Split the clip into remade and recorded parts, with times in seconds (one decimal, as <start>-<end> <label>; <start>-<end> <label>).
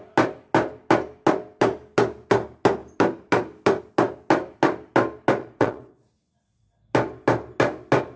0.0-5.4 recorded; 5.4-6.1 remade; 6.1-8.2 recorded